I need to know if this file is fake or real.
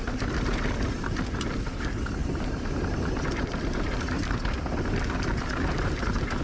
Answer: real